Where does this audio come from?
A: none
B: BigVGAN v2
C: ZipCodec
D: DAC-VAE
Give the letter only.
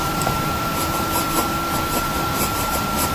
B